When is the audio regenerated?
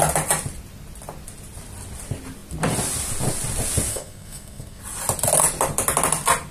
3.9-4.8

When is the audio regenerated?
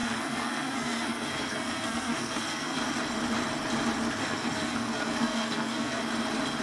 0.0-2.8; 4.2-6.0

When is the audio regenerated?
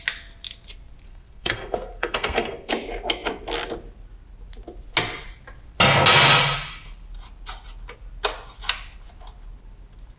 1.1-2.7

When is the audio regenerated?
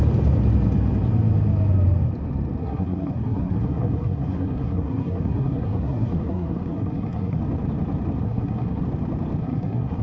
2.6-7.4; 8.2-8.8; 9.4-10.0